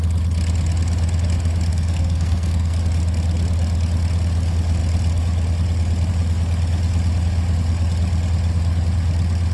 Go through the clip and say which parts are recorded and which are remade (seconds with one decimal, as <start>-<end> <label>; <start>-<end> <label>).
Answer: 0.0-1.7 recorded; 1.7-2.8 remade; 2.8-9.5 recorded